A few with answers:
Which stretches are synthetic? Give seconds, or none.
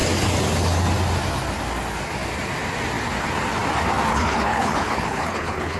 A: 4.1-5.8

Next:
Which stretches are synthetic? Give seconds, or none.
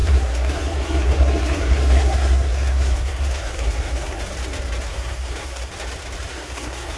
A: 0.0-4.2; 4.9-5.7; 6.3-7.0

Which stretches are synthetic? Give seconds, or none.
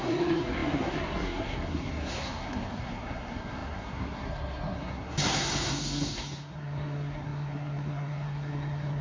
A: 0.0-9.0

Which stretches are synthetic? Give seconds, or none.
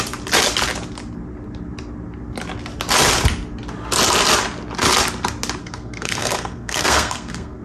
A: 5.6-7.6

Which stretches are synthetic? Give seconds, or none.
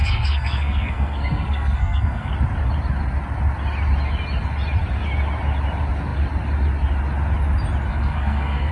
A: 0.0-2.3; 7.9-8.7